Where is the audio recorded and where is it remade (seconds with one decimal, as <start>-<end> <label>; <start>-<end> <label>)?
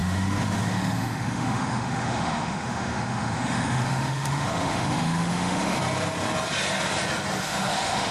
0.0-5.8 remade; 5.8-7.4 recorded; 7.4-8.1 remade